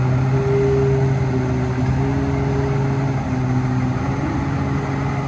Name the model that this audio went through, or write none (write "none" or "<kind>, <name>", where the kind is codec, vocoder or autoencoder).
none